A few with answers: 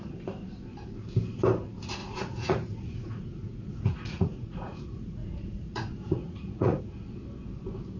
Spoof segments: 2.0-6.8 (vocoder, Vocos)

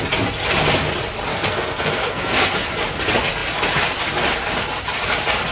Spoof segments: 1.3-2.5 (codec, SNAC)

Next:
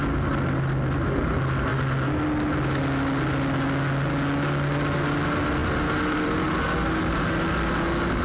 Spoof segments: 5.6-7.2 (vocoder, BigVGAN v2)

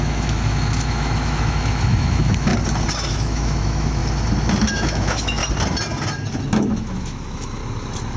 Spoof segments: 0.0-2.5 (autoencoder, DAC-VAE); 3.1-4.0; 4.7-5.4; 6.7-7.6

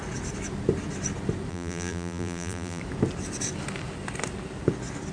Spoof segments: 1.5-2.8 (vocoder, BigVGAN v2)

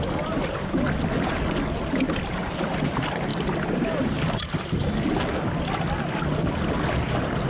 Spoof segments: none